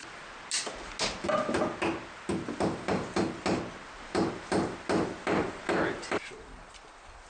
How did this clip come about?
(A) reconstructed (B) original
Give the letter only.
B